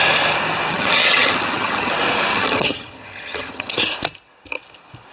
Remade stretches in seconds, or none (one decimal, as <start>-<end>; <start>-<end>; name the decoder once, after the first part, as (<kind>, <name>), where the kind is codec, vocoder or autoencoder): 0.7-1.9 (vocoder, HiFi-GAN); 2.3-3.7